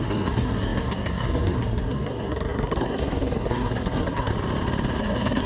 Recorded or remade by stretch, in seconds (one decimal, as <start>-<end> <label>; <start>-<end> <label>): 0.0-4.3 remade; 4.3-5.0 recorded; 5.0-5.5 remade